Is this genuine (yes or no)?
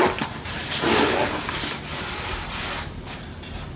yes